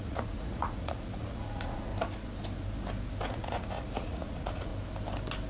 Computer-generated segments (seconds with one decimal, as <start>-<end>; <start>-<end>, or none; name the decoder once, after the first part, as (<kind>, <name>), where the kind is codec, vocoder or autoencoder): 0.0-1.9 (vocoder, Vocos); 3.3-4.7